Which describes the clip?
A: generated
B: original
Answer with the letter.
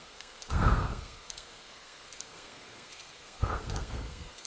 A